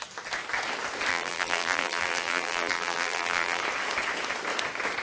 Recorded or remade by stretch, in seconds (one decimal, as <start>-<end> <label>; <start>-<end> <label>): 0.0-1.1 recorded; 1.1-3.6 remade; 3.6-5.0 recorded